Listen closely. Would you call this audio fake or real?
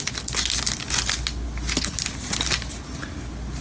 real